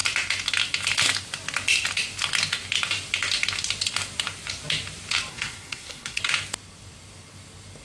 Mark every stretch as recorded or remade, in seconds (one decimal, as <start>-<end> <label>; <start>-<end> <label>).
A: 0.0-5.3 recorded; 5.3-6.2 remade; 6.2-7.8 recorded